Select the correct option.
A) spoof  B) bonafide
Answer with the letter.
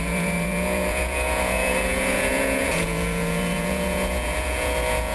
A